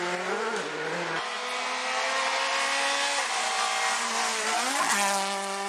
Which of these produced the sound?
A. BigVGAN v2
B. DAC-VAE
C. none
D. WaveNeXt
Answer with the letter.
C